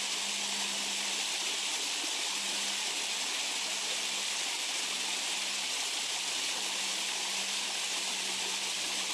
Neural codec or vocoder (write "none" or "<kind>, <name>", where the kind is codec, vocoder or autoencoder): none